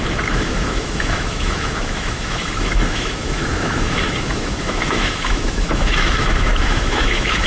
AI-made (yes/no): yes